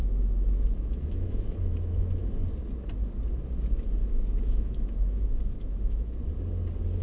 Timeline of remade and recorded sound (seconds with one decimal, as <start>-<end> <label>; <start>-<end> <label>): 0.0-2.3 remade; 2.3-4.0 recorded; 4.0-6.2 remade; 6.2-7.0 recorded